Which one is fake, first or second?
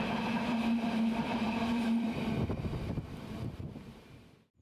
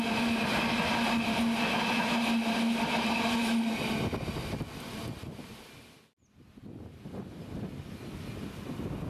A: first